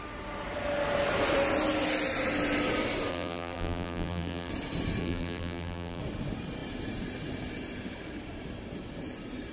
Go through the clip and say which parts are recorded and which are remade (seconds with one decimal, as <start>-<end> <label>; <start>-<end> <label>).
0.0-3.1 recorded; 3.1-4.5 remade; 4.5-5.0 recorded; 5.0-6.0 remade; 6.0-9.5 recorded